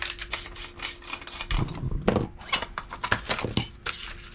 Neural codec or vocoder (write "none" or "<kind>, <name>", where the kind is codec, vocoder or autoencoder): none